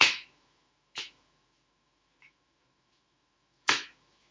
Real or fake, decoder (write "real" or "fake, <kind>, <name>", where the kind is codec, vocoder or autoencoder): fake, autoencoder, DAC-VAE